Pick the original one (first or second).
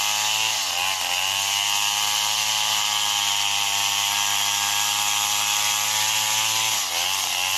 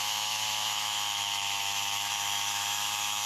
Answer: first